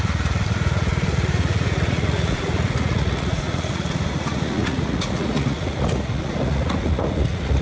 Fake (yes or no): yes